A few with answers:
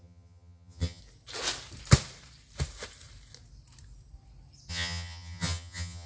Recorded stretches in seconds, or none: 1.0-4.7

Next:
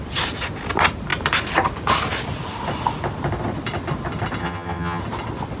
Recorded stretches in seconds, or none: 0.0-4.4; 5.0-5.6